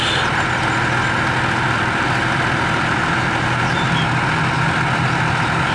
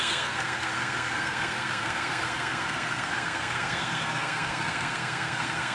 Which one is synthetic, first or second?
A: second